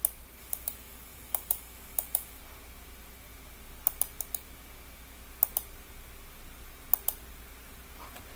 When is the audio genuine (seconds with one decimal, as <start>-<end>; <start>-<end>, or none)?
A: 0.0-0.4; 2.4-8.4

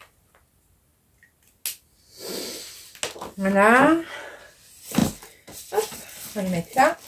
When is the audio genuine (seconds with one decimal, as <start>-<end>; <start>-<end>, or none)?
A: 0.0-7.1

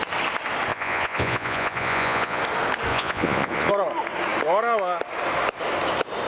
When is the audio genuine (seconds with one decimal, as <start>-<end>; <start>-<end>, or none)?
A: 0.0-0.7; 2.4-2.9; 3.7-6.3

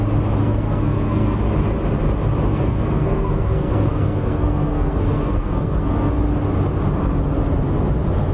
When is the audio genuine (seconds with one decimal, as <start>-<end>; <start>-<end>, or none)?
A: 0.0-0.4; 1.4-2.5; 6.1-8.3